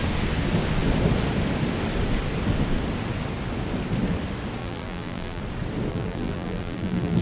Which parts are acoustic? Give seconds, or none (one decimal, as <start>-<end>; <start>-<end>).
0.0-4.6; 5.4-5.9